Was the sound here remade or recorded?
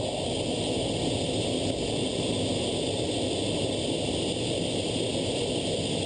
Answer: recorded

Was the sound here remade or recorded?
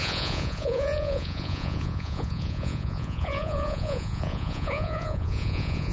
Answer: remade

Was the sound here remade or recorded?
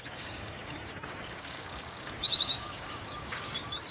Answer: remade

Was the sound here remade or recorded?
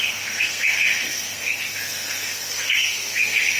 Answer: remade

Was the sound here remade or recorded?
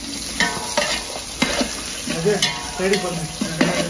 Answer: recorded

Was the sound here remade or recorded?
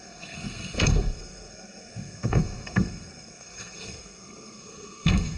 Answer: remade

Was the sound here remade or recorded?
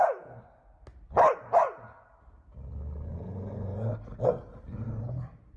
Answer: recorded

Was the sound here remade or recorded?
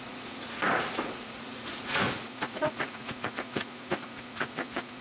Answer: remade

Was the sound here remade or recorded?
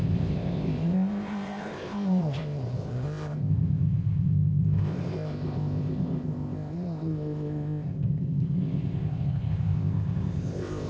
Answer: remade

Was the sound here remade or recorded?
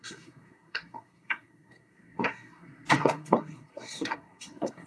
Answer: remade